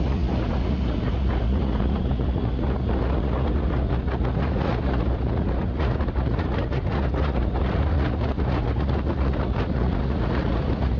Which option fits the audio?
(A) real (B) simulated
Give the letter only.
B